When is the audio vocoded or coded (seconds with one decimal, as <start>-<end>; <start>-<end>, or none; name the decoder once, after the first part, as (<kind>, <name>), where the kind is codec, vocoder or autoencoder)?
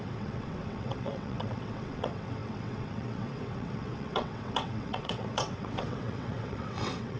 0.0-7.2 (vocoder, WaveNeXt)